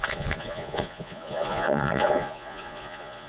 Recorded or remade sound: remade